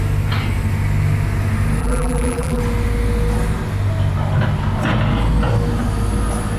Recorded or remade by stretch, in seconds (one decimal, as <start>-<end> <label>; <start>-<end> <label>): 0.0-1.8 recorded; 1.8-2.6 remade; 2.6-6.6 recorded